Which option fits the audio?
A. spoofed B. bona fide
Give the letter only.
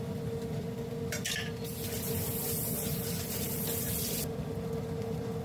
B